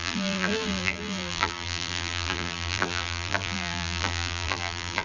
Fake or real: fake